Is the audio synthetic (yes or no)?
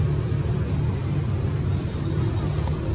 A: no